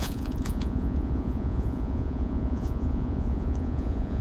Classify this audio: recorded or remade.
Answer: remade